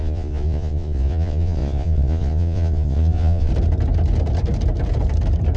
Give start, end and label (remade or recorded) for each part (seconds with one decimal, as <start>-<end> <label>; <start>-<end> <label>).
0.0-3.5 remade; 3.5-5.6 recorded